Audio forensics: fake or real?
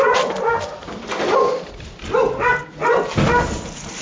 real